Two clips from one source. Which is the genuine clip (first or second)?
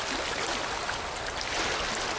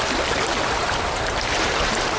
first